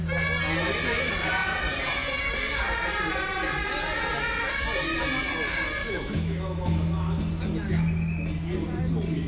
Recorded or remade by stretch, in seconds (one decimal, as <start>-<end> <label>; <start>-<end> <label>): 0.0-5.8 recorded; 5.8-7.2 remade; 7.2-9.3 recorded